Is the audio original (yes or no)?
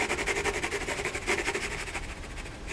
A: no